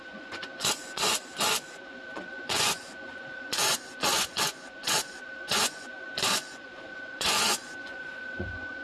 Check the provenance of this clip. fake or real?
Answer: fake